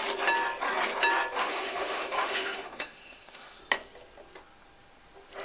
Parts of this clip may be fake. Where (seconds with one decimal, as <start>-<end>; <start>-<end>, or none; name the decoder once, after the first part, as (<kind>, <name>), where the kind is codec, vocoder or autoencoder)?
1.4-3.6 (autoencoder, DAC-VAE)